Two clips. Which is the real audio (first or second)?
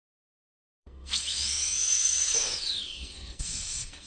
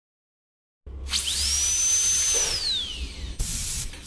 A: second